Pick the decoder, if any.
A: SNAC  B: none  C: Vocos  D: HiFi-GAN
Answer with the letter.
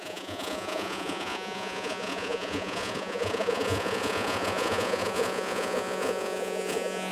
C